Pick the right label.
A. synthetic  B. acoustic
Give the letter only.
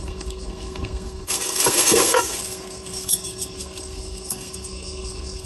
A